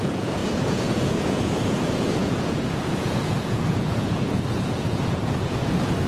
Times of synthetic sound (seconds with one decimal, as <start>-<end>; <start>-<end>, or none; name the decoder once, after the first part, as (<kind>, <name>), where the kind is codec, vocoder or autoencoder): 0.0-6.1 (vocoder, Vocos)